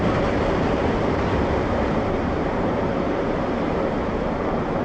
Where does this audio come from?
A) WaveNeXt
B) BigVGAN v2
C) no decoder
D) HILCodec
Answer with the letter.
B